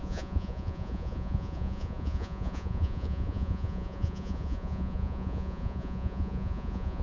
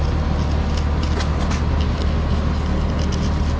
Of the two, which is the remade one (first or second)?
first